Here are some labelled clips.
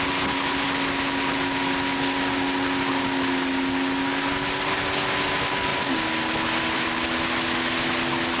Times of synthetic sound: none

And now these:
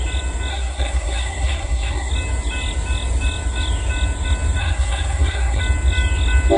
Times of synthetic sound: 0.5-2.1; 4.6-5.6